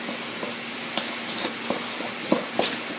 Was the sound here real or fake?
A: real